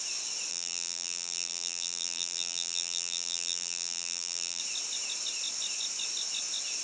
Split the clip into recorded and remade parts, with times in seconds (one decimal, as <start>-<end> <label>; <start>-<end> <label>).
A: 0.0-0.5 recorded; 0.5-4.6 remade; 4.6-6.8 recorded